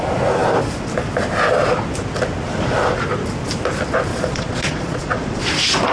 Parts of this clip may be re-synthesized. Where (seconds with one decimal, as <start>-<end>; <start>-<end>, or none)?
4.1-5.4